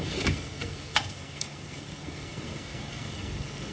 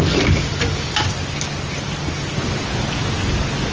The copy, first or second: first